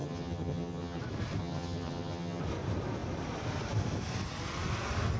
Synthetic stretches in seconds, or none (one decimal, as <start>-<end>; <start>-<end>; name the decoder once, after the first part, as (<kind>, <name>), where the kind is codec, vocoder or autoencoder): 0.0-1.0 (vocoder, HiFi-GAN); 1.4-2.4